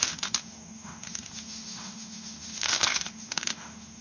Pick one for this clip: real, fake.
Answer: fake